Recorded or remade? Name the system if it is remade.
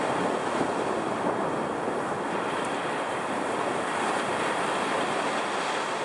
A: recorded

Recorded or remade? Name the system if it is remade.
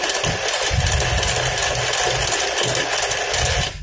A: recorded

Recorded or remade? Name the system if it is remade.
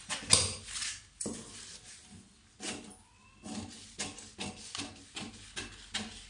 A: recorded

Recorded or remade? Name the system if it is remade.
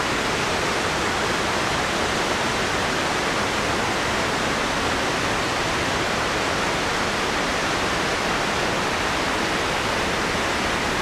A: recorded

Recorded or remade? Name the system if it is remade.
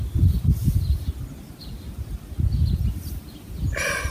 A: recorded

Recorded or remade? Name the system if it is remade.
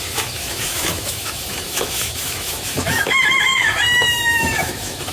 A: remade, autoencoder, DAC-VAE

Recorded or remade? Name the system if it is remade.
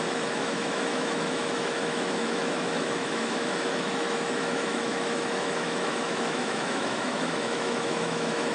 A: remade, autoencoder, DAC-VAE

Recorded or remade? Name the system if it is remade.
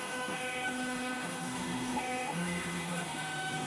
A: remade, autoencoder, DAC-VAE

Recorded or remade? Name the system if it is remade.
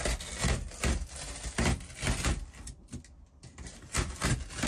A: recorded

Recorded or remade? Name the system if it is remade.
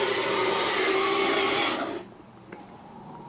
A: recorded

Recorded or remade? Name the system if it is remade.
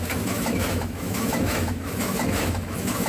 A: remade, autoencoder, DAC-VAE